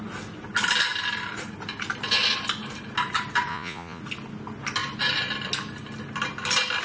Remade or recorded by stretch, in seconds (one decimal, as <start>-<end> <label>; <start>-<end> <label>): 0.0-3.5 recorded; 3.5-4.0 remade; 4.0-6.8 recorded

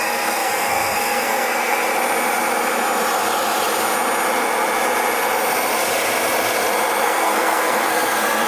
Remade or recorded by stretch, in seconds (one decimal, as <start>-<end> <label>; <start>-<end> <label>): 0.0-1.9 remade; 1.9-7.0 recorded; 7.0-8.5 remade

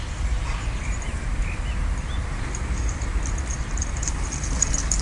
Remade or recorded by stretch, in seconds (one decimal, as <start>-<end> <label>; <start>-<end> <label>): 0.0-5.0 recorded

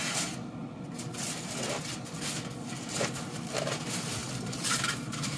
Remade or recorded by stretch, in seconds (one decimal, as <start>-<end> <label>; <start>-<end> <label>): 0.0-5.4 recorded

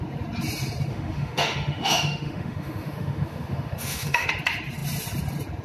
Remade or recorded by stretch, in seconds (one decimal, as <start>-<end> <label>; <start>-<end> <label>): 0.0-0.9 recorded; 0.9-4.3 remade; 4.3-5.6 recorded